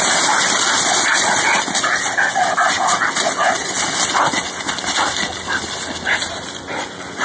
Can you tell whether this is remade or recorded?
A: recorded